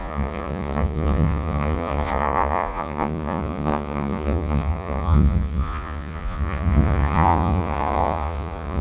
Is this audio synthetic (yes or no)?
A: yes